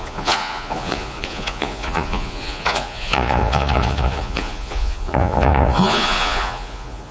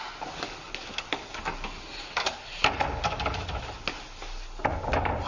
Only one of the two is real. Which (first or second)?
second